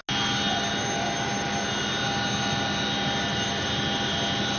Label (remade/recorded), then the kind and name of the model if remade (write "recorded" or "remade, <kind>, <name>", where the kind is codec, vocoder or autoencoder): recorded